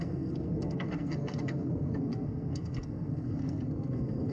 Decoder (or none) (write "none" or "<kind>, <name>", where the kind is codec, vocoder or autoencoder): codec, SNAC